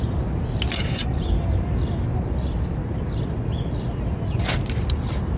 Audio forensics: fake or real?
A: real